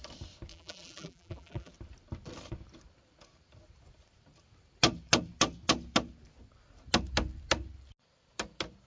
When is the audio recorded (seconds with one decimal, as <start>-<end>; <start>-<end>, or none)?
0.0-0.5; 1.7-8.9